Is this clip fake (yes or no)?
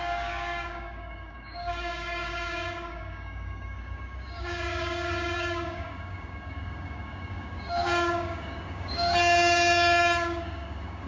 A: yes